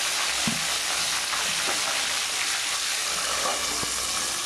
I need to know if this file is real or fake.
real